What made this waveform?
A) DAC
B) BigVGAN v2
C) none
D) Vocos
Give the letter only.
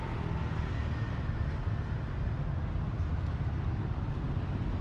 C